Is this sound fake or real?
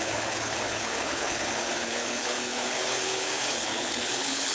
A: fake